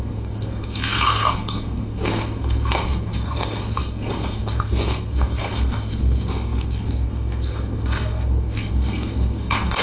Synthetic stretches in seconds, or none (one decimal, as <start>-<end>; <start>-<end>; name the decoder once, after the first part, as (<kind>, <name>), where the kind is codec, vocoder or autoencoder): 0.0-9.8 (codec, SNAC)